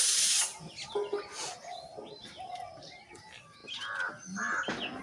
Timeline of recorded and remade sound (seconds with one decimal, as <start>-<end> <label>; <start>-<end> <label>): 0.0-5.0 recorded